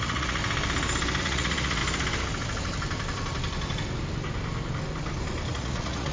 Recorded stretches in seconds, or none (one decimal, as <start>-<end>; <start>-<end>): 0.4-1.2; 1.8-5.5